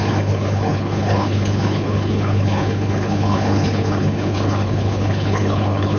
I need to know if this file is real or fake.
fake